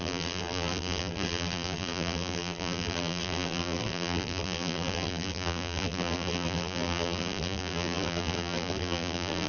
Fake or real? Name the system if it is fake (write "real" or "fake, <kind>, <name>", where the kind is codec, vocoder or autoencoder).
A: fake, vocoder, BigVGAN v2